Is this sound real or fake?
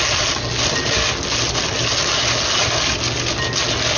real